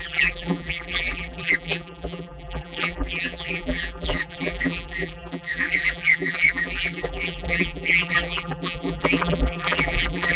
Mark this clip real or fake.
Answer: fake